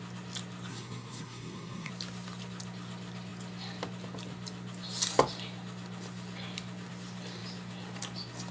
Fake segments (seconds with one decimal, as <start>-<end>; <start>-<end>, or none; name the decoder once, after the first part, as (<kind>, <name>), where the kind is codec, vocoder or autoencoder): 0.7-1.9 (codec, SNAC)